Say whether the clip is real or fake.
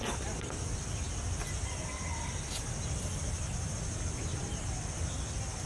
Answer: real